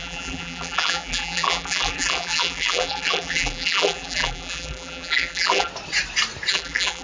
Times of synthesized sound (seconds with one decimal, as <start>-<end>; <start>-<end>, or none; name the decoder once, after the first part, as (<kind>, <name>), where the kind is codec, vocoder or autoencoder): 0.0-5.7 (vocoder, BigVGAN v2); 6.5-7.0